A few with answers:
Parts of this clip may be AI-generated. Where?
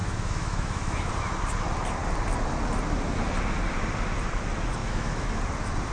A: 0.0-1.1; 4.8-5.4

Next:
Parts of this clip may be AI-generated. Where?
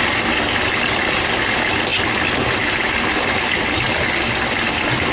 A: none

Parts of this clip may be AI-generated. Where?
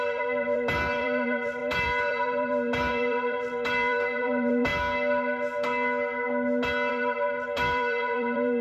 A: 0.0-4.7; 6.9-8.6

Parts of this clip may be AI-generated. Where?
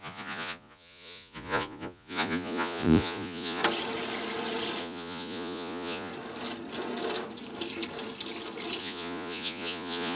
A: 0.0-3.6; 4.8-6.1; 8.8-10.2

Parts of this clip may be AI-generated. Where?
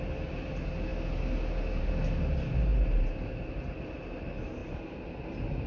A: none